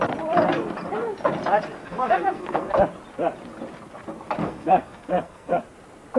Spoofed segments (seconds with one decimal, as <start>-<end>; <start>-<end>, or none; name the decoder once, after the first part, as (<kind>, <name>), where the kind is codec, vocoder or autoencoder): 1.8-2.7 (codec, SNAC); 4.4-5.6